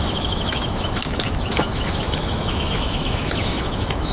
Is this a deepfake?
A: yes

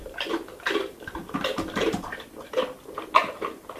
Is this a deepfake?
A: yes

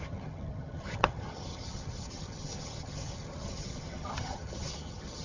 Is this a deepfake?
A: yes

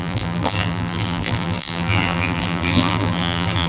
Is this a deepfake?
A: yes